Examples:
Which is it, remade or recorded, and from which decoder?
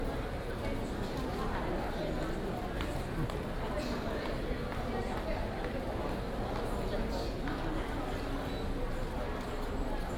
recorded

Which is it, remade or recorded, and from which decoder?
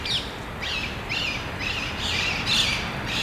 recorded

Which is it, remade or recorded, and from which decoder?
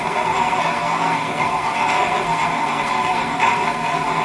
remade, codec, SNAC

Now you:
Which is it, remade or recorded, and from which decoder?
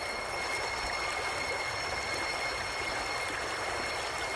recorded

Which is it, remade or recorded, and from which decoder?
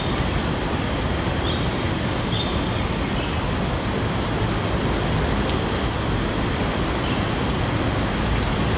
recorded